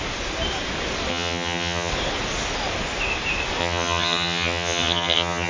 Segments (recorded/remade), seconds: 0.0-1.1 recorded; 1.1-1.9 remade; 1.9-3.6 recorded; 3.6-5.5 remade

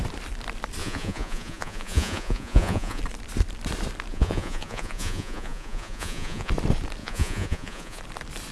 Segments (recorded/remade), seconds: 0.0-0.8 recorded; 0.8-3.0 remade; 3.0-4.1 recorded; 4.1-6.5 remade; 6.5-7.0 recorded; 7.0-8.0 remade; 8.0-8.5 recorded

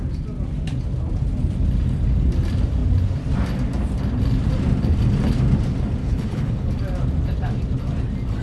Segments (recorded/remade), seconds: 0.0-6.0 recorded; 6.0-6.7 remade; 6.7-8.4 recorded

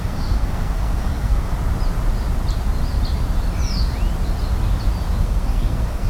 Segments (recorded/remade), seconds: 0.0-1.5 remade; 1.5-5.2 recorded; 5.2-6.1 remade

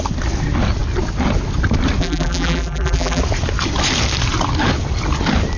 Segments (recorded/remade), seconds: 0.0-2.0 recorded; 2.0-3.2 remade; 3.2-5.6 recorded

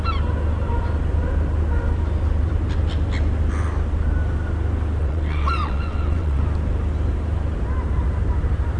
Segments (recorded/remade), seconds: 0.0-5.0 recorded; 5.0-6.4 remade; 6.4-8.8 recorded